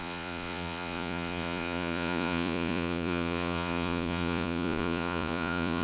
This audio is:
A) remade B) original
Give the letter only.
A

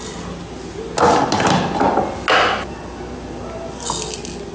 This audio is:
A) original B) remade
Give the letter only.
A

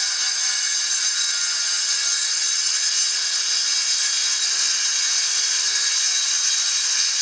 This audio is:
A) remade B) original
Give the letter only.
B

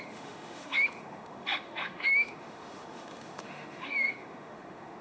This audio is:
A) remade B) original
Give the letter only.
A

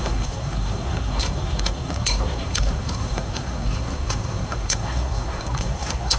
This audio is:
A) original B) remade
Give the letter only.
B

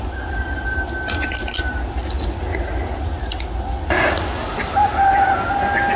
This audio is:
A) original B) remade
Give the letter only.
A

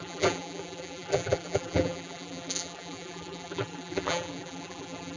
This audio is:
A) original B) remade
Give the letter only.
B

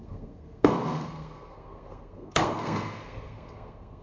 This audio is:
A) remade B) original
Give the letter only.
A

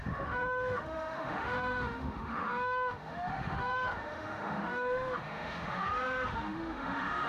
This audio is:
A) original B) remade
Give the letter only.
B